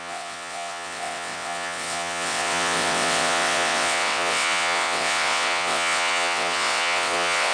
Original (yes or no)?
no